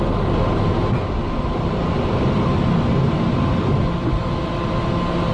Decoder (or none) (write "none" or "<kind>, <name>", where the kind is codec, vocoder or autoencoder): none